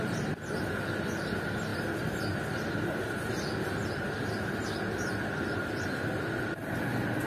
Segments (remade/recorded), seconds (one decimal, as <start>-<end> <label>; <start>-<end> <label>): 0.0-7.3 recorded